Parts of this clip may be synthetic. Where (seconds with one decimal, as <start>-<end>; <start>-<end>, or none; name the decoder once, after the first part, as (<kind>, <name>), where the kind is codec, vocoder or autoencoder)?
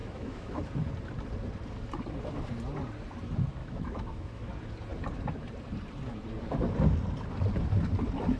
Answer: 0.0-0.6 (autoencoder, DAC-VAE); 3.6-4.5